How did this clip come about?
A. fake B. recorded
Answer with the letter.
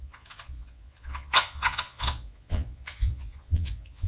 A